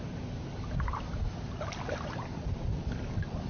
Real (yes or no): yes